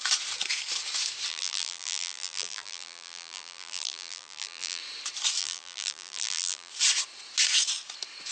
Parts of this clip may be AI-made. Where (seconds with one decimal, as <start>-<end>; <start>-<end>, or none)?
1.3-4.8; 5.4-6.7